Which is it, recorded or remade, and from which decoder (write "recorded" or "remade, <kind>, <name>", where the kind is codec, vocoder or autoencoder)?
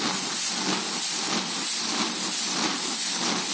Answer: recorded